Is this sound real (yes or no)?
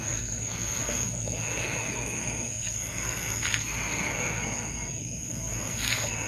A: no